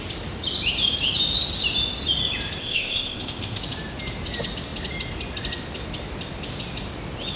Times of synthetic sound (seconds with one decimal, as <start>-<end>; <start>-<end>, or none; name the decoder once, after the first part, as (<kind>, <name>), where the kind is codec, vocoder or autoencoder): 2.6-3.6 (codec, ZipCodec)